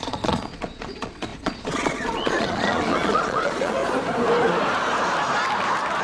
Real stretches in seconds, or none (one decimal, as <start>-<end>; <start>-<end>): 3.8-6.0